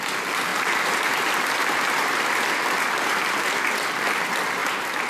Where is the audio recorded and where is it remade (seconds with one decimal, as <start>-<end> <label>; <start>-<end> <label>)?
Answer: 0.0-5.1 recorded